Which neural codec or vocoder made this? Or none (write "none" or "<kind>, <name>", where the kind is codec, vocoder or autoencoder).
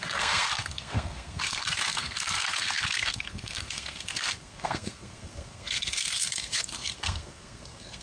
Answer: codec, SNAC